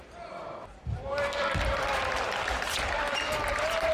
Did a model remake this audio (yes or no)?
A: yes